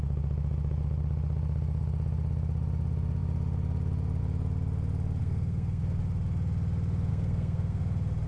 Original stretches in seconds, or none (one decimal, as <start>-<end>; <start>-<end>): 0.0-5.2; 5.8-7.1; 7.8-8.3